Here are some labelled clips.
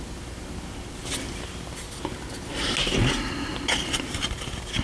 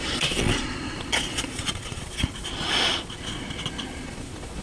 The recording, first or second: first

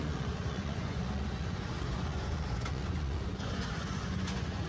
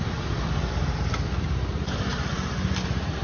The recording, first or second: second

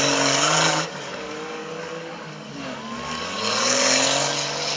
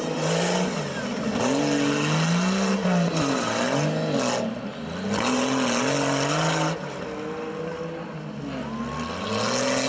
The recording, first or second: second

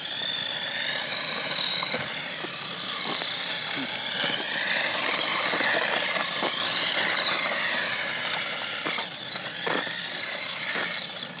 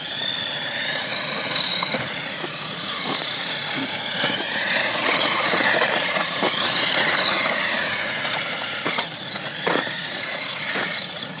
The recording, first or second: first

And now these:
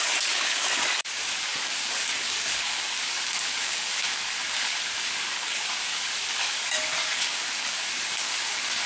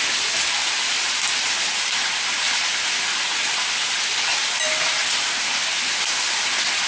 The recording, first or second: second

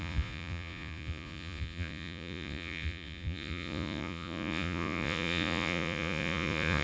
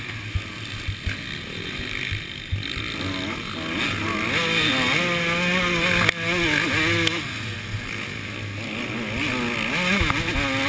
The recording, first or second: second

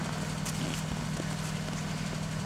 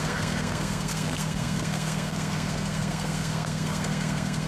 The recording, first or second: first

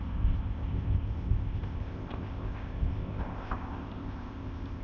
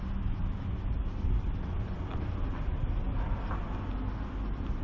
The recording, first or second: second